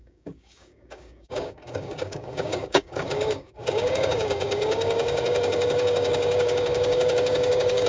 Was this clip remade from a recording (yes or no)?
yes